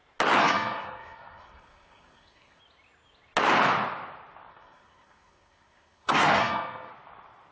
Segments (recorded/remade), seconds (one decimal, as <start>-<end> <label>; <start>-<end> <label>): 0.0-0.4 recorded; 0.4-2.6 remade; 2.6-4.5 recorded; 4.5-6.9 remade; 6.9-7.5 recorded